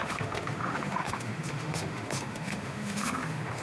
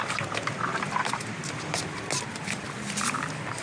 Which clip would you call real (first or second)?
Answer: second